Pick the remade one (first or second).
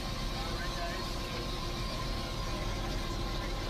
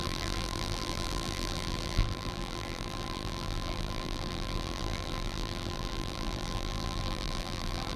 second